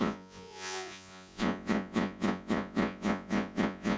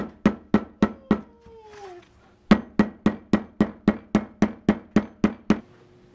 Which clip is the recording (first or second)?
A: second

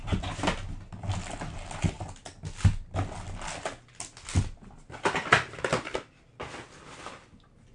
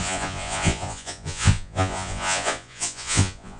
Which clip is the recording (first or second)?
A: first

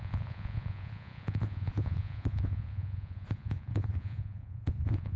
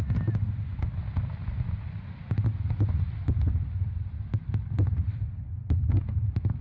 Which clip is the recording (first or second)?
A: second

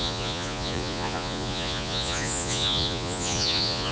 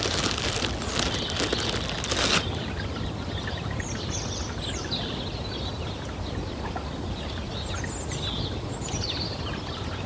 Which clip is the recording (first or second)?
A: second